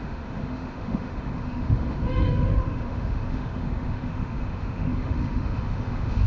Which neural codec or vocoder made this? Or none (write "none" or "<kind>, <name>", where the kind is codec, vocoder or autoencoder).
autoencoder, DAC-VAE